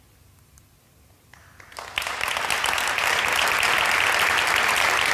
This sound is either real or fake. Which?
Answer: real